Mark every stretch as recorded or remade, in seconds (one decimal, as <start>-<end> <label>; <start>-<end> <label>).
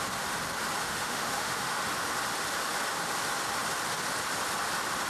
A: 0.0-0.8 recorded; 0.8-1.8 remade; 1.8-5.1 recorded